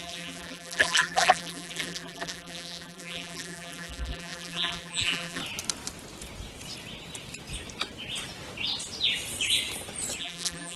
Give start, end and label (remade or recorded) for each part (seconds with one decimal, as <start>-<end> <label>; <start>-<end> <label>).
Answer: 0.0-5.4 remade; 5.4-10.2 recorded; 10.2-10.8 remade